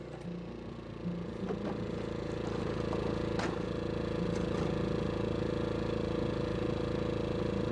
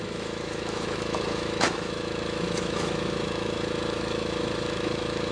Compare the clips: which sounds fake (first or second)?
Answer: second